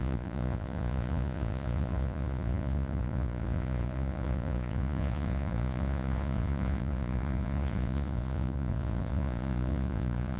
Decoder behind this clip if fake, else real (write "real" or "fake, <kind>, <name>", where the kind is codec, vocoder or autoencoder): fake, vocoder, Vocos